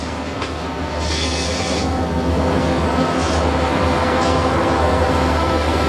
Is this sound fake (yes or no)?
yes